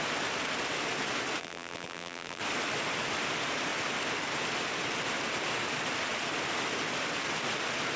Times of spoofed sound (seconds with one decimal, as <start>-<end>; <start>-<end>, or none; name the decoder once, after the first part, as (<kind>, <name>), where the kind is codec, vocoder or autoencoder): 1.4-2.4 (vocoder, BigVGAN v2)